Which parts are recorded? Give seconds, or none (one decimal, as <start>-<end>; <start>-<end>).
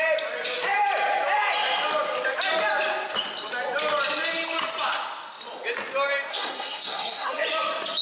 0.0-6.3; 7.3-8.0